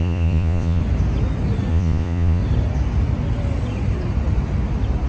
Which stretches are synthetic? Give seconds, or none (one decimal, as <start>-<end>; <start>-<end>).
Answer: 0.0-0.8; 1.7-2.4